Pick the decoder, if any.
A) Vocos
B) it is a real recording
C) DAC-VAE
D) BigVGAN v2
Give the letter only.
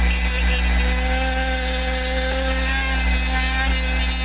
B